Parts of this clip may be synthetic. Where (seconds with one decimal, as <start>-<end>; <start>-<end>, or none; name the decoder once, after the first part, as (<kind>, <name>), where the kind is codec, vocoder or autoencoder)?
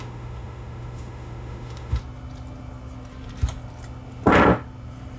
0.0-2.0 (autoencoder, DAC-VAE)